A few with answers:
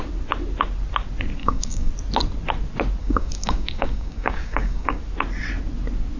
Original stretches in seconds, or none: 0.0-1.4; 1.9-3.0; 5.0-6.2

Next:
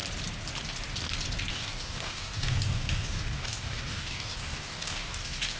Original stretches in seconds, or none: 0.0-1.5

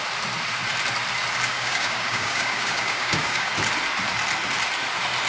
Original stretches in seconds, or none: 0.0-1.5; 3.5-5.3

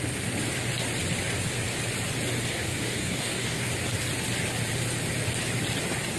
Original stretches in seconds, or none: 0.0-2.5; 3.7-6.2